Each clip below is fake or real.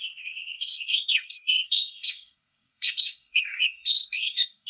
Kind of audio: fake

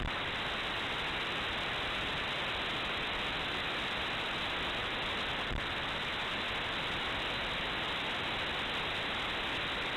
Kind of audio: real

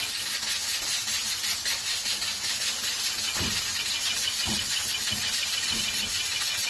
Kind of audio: real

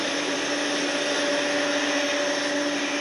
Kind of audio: real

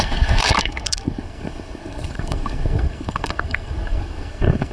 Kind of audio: fake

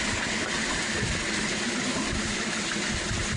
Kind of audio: real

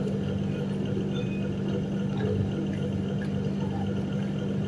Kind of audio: real